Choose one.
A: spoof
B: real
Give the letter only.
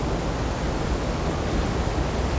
B